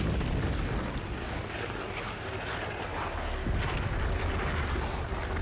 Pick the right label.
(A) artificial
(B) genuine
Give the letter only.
B